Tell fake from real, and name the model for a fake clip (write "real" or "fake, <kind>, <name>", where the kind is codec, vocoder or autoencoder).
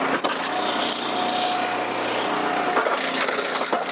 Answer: real